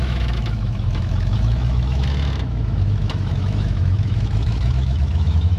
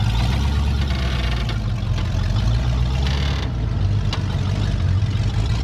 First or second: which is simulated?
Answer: first